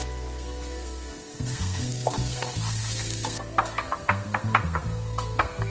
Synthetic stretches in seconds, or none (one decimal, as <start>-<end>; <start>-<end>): 0.0-5.7